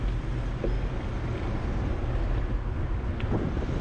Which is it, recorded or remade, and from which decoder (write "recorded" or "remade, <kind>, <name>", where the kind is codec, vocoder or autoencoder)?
recorded